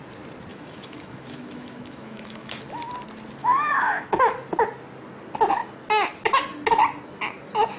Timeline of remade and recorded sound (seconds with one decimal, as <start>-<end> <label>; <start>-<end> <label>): 0.0-0.5 recorded; 0.5-2.6 remade; 2.6-3.4 recorded; 3.4-4.3 remade; 4.3-7.8 recorded